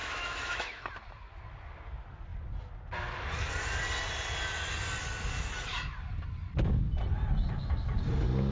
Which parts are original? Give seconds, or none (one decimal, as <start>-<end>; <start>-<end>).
0.8-8.5